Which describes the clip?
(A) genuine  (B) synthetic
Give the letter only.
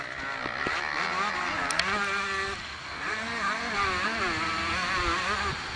A